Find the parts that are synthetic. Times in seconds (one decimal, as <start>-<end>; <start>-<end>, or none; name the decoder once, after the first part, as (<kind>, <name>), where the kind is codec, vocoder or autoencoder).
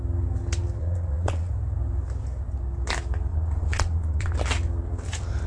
0.8-1.5 (vocoder, Vocos); 3.3-4.3